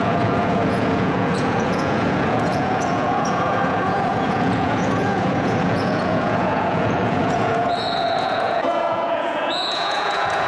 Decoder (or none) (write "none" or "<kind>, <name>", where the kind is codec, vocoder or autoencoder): vocoder, Vocos